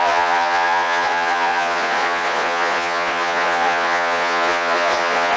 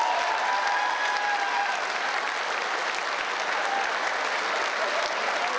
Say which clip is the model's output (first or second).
first